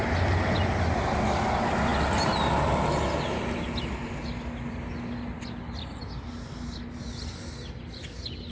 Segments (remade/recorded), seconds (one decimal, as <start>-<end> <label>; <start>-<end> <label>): 0.0-8.5 recorded

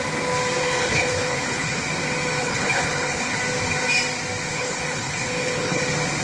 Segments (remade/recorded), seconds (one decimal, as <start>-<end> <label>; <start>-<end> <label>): 0.0-0.6 recorded; 0.6-1.8 remade; 1.8-2.4 recorded; 2.4-3.4 remade; 3.4-4.5 recorded; 4.5-5.8 remade; 5.8-6.2 recorded

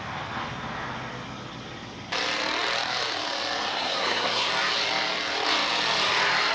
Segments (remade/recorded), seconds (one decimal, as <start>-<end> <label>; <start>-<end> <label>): 0.0-3.7 recorded; 3.7-4.5 remade; 4.5-6.5 recorded

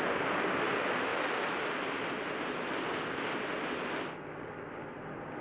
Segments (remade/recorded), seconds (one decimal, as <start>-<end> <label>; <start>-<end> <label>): 0.0-5.4 recorded